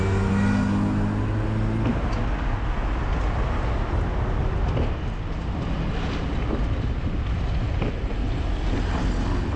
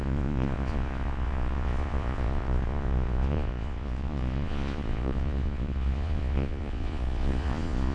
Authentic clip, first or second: first